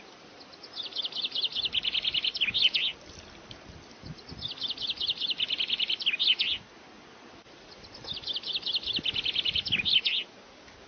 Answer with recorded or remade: recorded